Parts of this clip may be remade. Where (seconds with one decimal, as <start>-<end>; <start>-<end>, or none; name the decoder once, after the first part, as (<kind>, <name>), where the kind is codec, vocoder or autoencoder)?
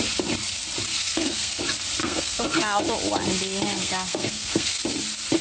0.9-1.6 (codec, SNAC); 2.0-2.8; 3.8-4.8